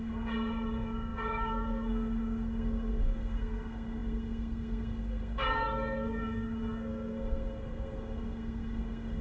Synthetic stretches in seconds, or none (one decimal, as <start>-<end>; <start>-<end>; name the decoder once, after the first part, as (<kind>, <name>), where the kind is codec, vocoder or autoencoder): 0.0-9.2 (codec, SNAC)